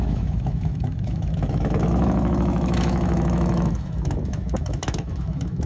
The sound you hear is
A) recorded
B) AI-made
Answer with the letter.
B